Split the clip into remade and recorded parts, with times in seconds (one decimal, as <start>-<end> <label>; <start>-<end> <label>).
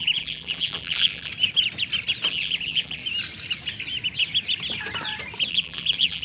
0.0-1.3 remade; 1.3-2.3 recorded; 2.3-3.0 remade; 3.0-5.5 recorded; 5.5-6.2 remade